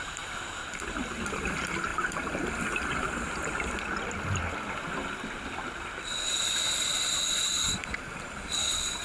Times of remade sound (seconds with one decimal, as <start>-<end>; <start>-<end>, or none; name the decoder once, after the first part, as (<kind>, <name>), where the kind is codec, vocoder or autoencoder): none